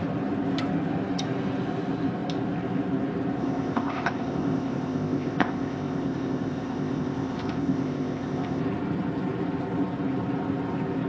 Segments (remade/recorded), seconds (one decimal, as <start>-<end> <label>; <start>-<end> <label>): 0.0-3.4 recorded; 3.4-8.6 remade; 8.6-11.1 recorded